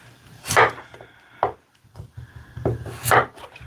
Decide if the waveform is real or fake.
fake